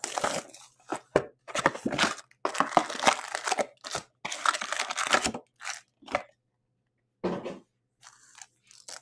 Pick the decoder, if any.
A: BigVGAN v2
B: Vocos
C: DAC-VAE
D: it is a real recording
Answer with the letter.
D